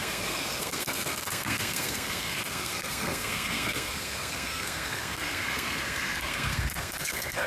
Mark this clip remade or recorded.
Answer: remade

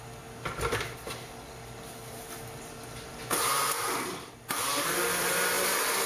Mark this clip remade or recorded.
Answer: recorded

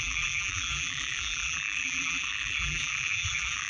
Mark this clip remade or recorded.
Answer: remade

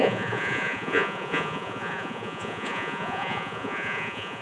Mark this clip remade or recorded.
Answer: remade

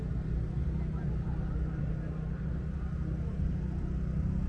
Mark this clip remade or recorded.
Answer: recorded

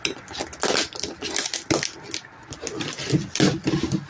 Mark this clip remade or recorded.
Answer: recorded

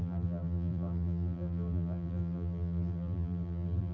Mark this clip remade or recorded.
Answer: remade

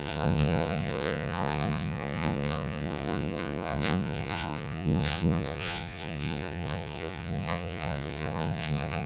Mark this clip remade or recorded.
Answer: remade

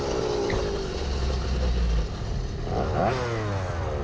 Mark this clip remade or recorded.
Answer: recorded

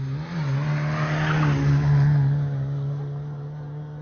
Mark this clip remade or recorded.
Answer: recorded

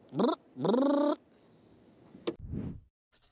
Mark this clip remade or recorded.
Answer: recorded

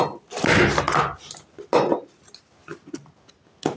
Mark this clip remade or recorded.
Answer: recorded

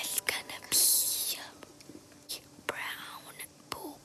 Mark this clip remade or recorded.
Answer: remade